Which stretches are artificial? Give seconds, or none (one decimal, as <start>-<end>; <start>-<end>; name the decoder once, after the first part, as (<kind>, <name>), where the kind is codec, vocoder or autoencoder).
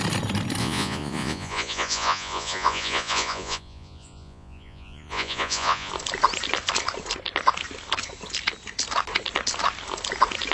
0.6-5.9 (vocoder, Vocos)